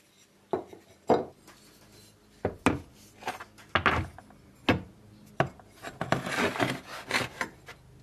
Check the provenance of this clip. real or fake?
real